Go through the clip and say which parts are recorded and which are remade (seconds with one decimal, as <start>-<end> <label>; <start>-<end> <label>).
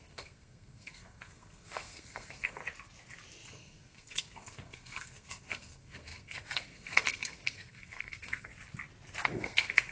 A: 0.0-2.6 remade; 2.6-3.5 recorded; 3.5-8.5 remade; 8.5-9.2 recorded; 9.2-9.9 remade